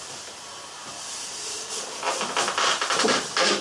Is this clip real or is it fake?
real